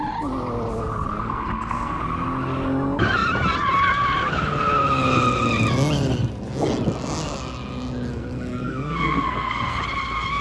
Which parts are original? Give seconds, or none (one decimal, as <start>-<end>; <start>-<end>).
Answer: 0.0-1.2; 2.0-8.1; 9.8-10.4